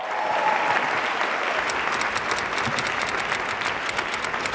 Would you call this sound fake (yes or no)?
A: no